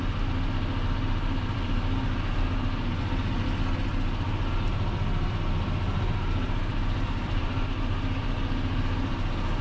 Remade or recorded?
recorded